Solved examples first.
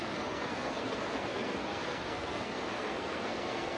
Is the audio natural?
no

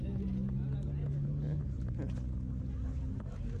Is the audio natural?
yes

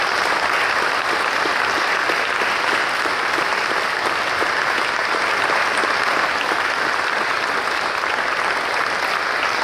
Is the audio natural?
yes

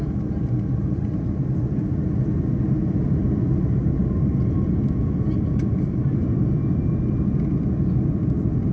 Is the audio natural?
yes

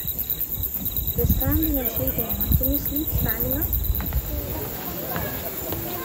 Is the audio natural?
yes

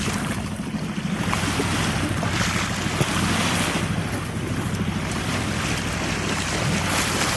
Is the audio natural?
yes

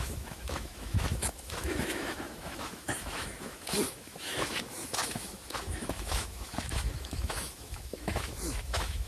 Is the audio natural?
no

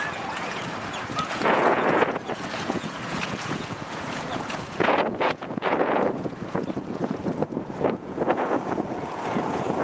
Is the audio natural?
no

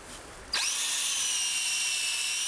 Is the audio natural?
yes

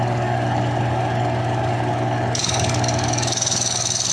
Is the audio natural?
no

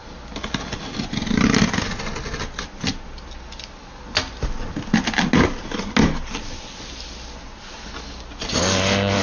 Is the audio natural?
yes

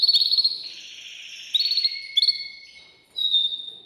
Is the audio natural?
yes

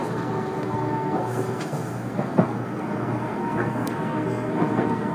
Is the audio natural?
no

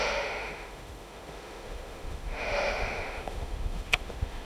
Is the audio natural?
no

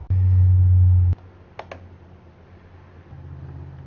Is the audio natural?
yes